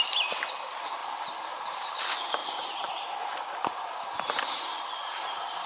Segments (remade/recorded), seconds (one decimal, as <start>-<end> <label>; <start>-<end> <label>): 0.0-1.0 recorded; 1.0-2.0 remade; 2.0-2.4 recorded; 2.4-3.3 remade; 3.3-5.7 recorded